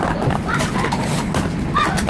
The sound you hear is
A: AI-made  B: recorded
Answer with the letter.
B